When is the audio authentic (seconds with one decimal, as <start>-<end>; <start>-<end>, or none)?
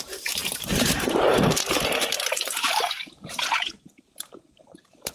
none